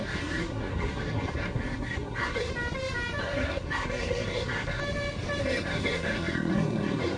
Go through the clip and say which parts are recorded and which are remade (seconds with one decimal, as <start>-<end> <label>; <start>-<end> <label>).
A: 0.0-2.5 remade; 2.5-3.2 recorded; 3.2-4.8 remade; 4.8-5.4 recorded; 5.4-7.2 remade